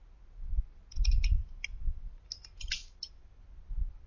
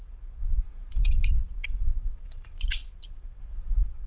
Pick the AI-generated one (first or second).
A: second